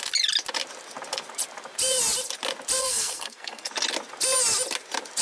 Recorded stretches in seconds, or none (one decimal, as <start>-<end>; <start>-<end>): 0.0-2.8; 3.7-5.2